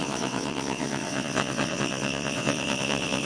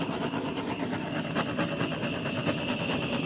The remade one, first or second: first